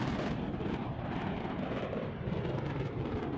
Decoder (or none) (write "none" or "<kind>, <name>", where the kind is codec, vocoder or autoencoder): vocoder, BigVGAN v2